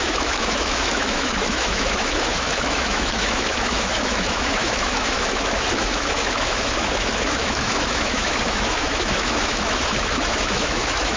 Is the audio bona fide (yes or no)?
no